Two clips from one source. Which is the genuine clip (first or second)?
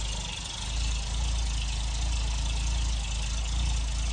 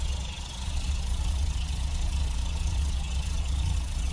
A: first